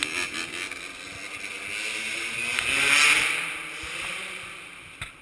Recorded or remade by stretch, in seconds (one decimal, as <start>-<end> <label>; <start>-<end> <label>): 0.0-5.2 recorded